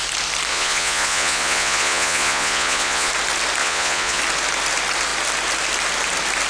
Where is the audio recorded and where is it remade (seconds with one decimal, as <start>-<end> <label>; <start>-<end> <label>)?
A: 0.0-0.5 recorded; 0.5-3.1 remade; 3.1-3.6 recorded; 3.6-4.2 remade; 4.2-6.5 recorded